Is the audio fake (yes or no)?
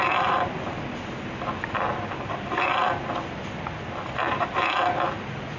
no